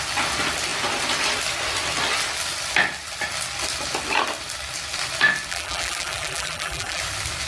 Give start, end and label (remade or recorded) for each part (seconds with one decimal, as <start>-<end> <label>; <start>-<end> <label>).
0.0-5.5 recorded; 5.5-7.0 remade; 7.0-7.5 recorded